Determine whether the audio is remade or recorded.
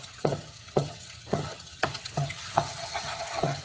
remade